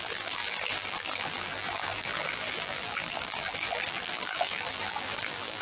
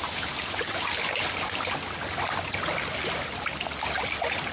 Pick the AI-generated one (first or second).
first